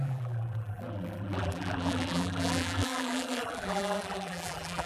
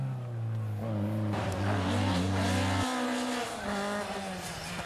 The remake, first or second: first